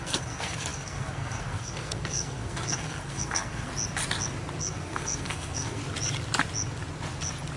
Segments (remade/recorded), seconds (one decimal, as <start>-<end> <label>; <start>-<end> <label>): 0.0-3.7 remade; 3.7-4.6 recorded; 4.6-5.8 remade; 5.8-7.6 recorded